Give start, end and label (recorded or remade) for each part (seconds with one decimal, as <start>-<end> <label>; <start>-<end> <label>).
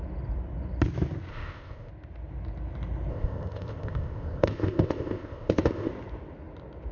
0.0-1.3 recorded; 1.3-1.9 remade; 1.9-3.1 recorded; 3.1-5.9 remade; 5.9-6.9 recorded